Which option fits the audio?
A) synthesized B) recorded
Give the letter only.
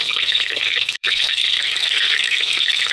A